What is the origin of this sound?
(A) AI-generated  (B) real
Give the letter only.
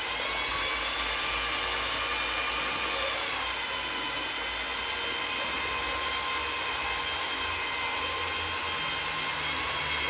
B